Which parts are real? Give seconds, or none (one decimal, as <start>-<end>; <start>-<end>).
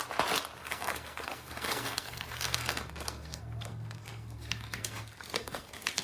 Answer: 0.0-0.6